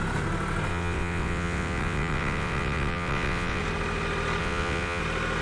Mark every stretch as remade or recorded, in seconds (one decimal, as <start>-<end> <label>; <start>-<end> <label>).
0.0-0.7 recorded; 0.7-3.6 remade; 3.6-4.4 recorded; 4.4-5.0 remade; 5.0-5.4 recorded